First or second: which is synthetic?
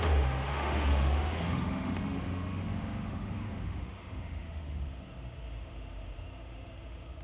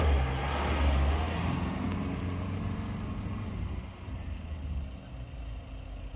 first